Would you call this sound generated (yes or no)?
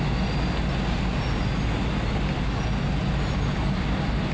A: no